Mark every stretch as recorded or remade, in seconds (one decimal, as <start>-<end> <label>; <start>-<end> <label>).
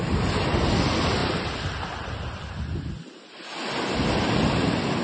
0.0-5.0 recorded